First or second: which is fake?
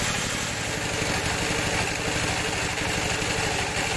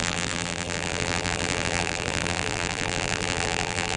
second